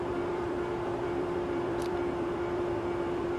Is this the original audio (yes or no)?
no